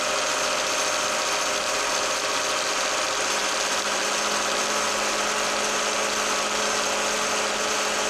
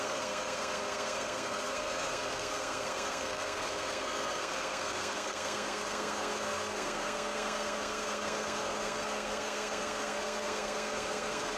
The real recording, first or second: first